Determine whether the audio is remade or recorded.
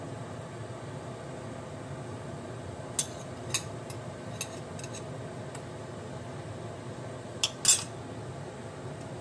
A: recorded